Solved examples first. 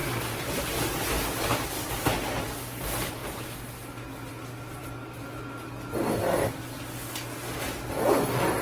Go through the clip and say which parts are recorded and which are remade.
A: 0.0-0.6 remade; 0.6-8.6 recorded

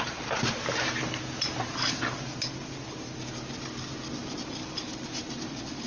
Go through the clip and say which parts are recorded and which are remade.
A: 0.0-5.9 recorded

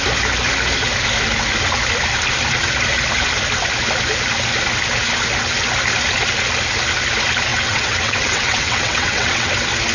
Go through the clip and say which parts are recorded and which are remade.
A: 0.0-7.5 recorded; 7.5-9.5 remade; 9.5-9.9 recorded

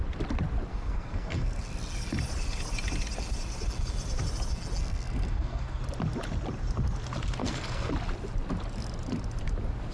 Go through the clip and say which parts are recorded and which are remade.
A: 0.0-0.7 recorded; 0.7-1.6 remade; 1.6-4.8 recorded; 4.8-5.8 remade; 5.8-7.4 recorded; 7.4-7.9 remade; 7.9-9.9 recorded